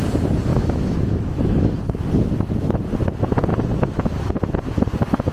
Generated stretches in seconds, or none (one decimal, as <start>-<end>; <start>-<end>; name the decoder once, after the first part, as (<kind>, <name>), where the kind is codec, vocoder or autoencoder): 0.5-1.7 (autoencoder, DAC-VAE)